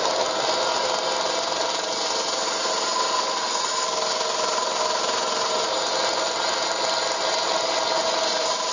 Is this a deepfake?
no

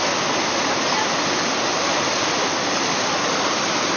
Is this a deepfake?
no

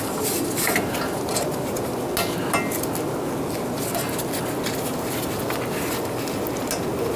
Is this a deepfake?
no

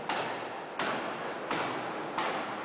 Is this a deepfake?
no